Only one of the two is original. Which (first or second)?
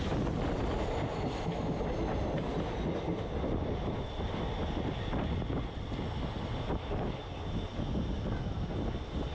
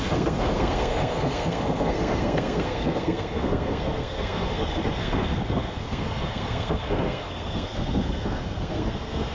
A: first